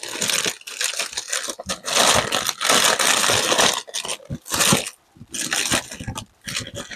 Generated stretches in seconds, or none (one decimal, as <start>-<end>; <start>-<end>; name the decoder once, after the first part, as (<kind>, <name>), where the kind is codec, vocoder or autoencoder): none